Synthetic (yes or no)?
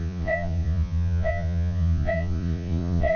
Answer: yes